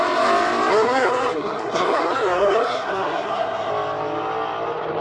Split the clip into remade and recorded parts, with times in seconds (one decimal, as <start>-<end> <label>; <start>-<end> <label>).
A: 0.0-0.7 recorded; 0.7-3.7 remade; 3.7-5.0 recorded